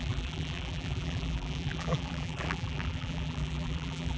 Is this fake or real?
fake